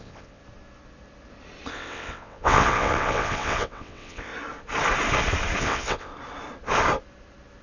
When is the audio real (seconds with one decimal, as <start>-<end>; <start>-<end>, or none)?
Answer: 0.4-1.7; 4.3-5.6; 6.1-7.6